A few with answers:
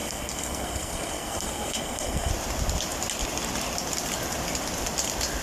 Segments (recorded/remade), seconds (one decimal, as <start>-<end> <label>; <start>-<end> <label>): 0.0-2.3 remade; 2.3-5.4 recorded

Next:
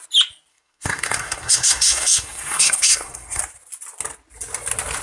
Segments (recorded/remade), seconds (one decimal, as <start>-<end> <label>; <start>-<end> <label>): 0.0-0.5 recorded; 0.5-3.4 remade; 3.4-5.0 recorded

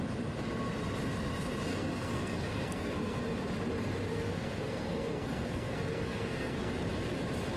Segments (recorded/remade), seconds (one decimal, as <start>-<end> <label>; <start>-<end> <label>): 0.0-1.7 recorded; 1.7-3.2 remade; 3.2-4.1 recorded; 4.1-6.7 remade; 6.7-7.6 recorded

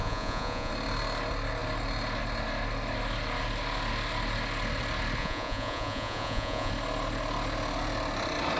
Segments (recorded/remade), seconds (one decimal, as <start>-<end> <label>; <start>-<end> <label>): 0.0-0.7 remade; 0.7-5.2 recorded; 5.2-6.7 remade; 6.7-8.6 recorded

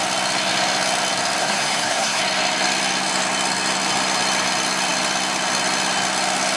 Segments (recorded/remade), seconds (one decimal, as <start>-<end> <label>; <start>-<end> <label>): 0.0-1.4 recorded; 1.4-2.2 remade; 2.2-6.6 recorded